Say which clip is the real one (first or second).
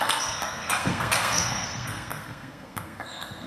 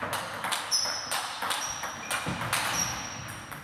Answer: second